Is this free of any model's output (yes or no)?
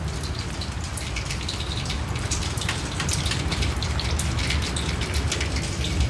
yes